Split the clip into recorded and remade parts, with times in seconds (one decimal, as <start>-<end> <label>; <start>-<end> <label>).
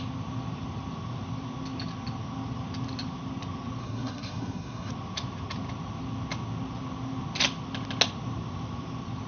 0.0-3.8 recorded; 3.8-4.9 remade; 4.9-9.3 recorded